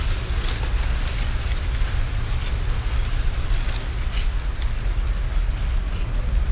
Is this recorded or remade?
recorded